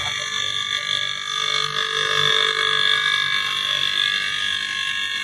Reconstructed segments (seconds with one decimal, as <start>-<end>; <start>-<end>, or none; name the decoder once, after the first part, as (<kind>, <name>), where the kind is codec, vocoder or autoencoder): none